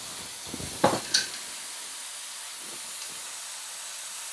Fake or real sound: real